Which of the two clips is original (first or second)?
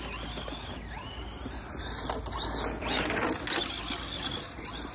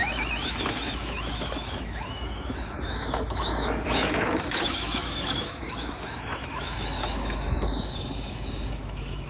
first